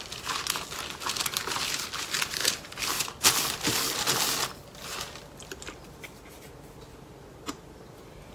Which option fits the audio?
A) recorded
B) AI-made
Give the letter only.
A